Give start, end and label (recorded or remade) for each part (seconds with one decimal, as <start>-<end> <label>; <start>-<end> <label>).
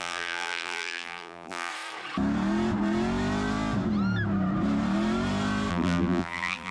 0.0-1.7 remade; 1.7-5.7 recorded; 5.7-6.7 remade